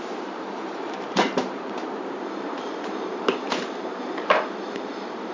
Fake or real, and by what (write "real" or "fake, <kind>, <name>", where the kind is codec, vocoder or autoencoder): fake, vocoder, BigVGAN v2